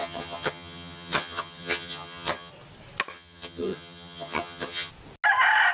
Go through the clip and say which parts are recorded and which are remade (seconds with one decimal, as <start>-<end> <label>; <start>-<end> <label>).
0.0-2.5 remade; 2.5-3.1 recorded; 3.1-4.9 remade; 4.9-5.7 recorded